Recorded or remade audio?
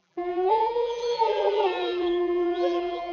remade